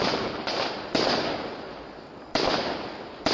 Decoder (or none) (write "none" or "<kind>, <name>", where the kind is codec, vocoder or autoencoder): none